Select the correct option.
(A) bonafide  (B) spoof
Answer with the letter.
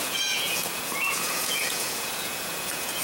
B